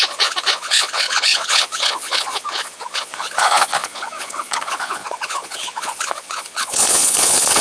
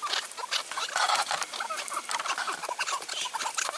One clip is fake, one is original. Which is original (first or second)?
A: second